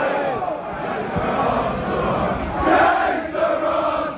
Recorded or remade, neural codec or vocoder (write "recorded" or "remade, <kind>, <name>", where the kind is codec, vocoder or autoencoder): recorded